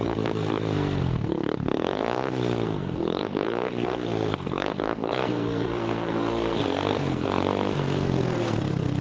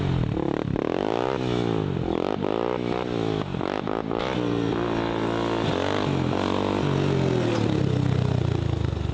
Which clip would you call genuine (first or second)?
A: second